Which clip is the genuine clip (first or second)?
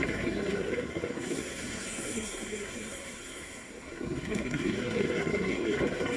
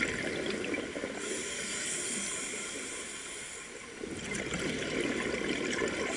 second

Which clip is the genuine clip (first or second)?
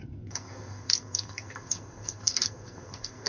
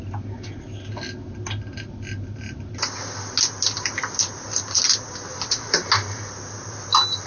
second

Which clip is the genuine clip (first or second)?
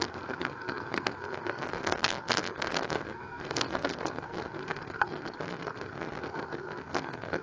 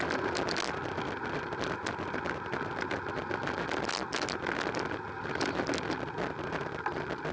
second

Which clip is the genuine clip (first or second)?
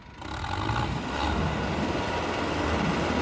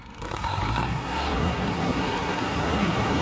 first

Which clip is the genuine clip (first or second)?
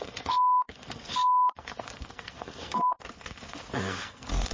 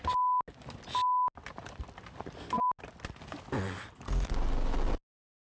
second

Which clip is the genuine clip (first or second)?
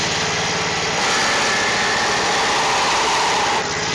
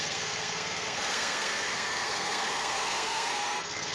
first